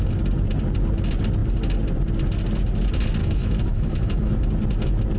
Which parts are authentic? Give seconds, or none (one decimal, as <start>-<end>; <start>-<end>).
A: 0.0-3.2; 4.3-5.2